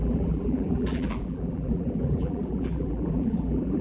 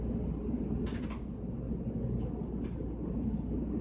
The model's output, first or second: first